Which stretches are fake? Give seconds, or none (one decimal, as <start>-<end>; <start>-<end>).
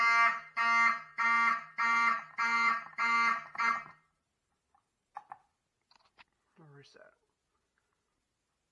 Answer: 1.1-5.1